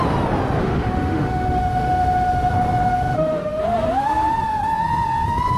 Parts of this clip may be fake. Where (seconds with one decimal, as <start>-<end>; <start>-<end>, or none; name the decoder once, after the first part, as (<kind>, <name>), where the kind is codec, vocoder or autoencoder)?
0.6-2.5 (autoencoder, DAC-VAE); 2.9-3.6